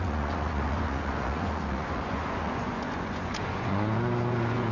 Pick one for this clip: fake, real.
fake